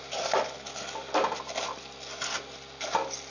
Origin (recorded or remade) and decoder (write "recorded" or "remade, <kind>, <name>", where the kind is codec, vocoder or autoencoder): recorded